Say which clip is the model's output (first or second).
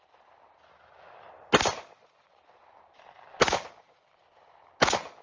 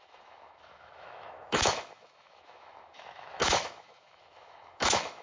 second